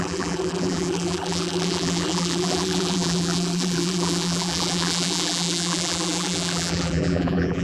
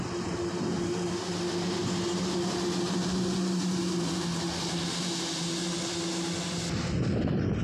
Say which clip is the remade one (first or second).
first